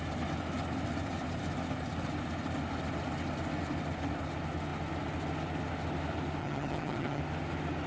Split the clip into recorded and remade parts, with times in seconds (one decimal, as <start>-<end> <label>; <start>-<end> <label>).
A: 0.0-6.4 recorded; 6.4-7.2 remade; 7.2-7.9 recorded